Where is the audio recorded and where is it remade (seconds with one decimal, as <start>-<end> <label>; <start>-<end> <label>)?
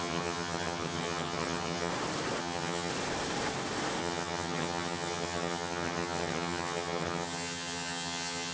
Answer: 0.0-1.9 remade; 1.9-2.4 recorded; 2.4-2.9 remade; 2.9-4.0 recorded; 4.0-8.5 remade